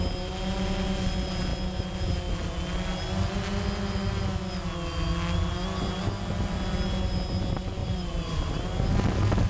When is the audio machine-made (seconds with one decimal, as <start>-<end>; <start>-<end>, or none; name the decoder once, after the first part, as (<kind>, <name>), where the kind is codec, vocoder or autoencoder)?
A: 7.8-8.9 (vocoder, BigVGAN v2)